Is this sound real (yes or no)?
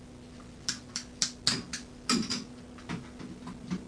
yes